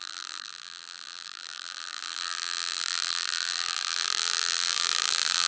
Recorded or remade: remade